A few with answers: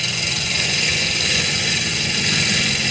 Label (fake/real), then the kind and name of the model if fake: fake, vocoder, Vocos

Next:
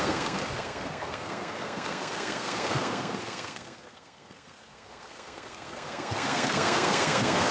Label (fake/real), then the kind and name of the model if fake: fake, codec, SNAC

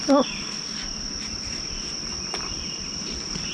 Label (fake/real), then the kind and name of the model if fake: real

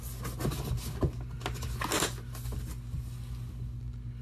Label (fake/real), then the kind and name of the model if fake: real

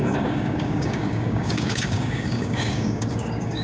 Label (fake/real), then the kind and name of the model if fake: fake, codec, DAC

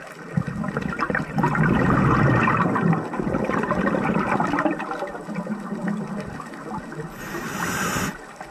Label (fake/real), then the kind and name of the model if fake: real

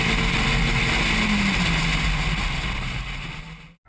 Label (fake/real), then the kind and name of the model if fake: real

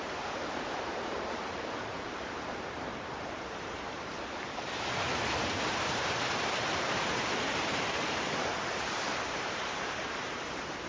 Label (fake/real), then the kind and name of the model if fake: fake, vocoder, BigVGAN v2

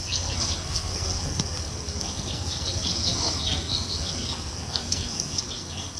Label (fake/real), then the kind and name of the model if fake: fake, codec, SNAC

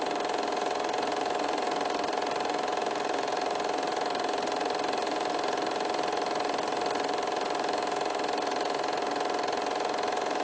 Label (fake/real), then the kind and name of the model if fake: fake, vocoder, BigVGAN v2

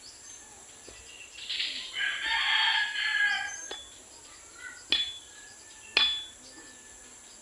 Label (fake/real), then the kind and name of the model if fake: real